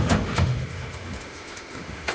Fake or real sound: fake